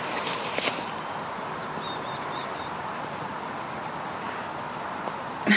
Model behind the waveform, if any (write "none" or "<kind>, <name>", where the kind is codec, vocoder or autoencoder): none